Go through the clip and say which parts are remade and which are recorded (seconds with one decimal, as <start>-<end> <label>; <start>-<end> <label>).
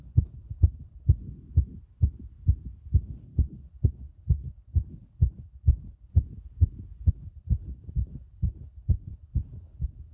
0.0-1.2 remade; 1.2-3.0 recorded; 3.0-6.1 remade; 6.1-7.1 recorded; 7.1-10.1 remade